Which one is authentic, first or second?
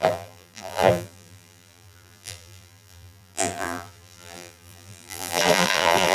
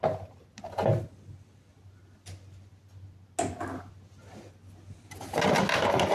second